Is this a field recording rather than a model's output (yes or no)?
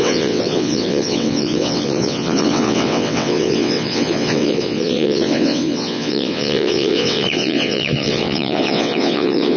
no